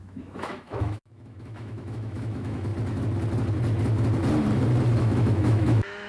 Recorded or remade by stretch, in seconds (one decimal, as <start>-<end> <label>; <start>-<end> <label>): 0.0-2.7 remade; 2.7-5.0 recorded; 5.0-6.1 remade